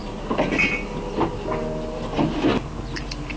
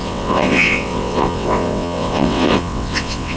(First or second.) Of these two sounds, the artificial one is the second